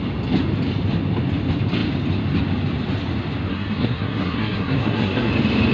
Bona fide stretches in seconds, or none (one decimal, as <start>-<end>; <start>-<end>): 0.0-3.5; 5.3-5.7